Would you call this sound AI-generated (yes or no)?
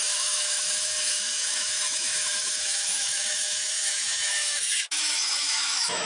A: yes